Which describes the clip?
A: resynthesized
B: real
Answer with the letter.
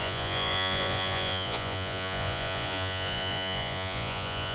A